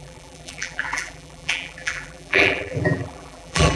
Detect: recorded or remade remade